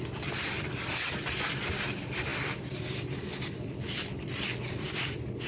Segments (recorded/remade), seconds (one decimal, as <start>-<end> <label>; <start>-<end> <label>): 0.0-5.5 remade